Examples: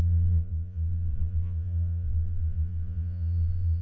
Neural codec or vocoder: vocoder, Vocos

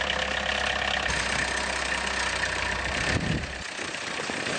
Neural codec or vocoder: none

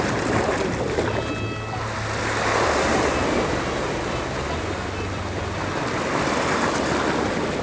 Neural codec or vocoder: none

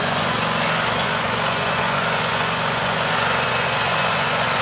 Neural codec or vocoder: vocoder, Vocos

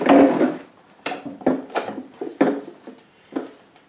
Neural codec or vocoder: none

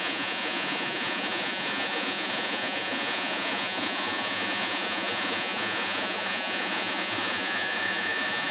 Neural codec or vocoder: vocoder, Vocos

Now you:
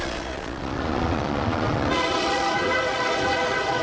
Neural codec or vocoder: vocoder, Vocos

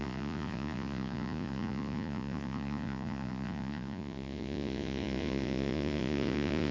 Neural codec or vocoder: vocoder, Vocos